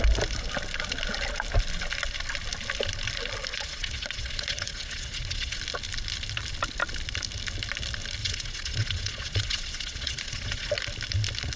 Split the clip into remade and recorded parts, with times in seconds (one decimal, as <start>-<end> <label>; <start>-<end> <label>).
0.0-3.5 recorded; 3.5-5.6 remade; 5.6-8.2 recorded; 8.2-10.7 remade; 10.7-11.6 recorded

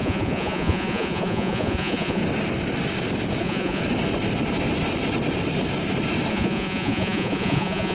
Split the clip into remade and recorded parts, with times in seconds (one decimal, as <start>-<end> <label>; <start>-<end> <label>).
0.0-2.2 remade; 2.2-3.4 recorded; 3.4-3.8 remade; 3.8-6.3 recorded; 6.3-7.9 remade

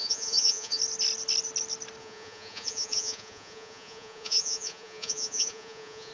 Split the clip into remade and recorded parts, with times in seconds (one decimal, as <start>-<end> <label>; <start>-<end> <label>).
0.0-0.8 remade; 0.8-2.0 recorded; 2.0-6.1 remade

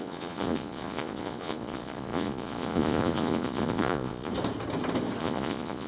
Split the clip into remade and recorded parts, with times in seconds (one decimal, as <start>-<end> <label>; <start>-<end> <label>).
0.0-4.3 remade; 4.3-5.2 recorded; 5.2-5.9 remade

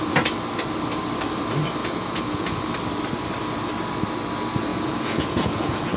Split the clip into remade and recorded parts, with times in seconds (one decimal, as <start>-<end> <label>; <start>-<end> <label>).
0.0-1.8 recorded; 1.8-2.6 remade; 2.6-4.7 recorded; 4.7-6.0 remade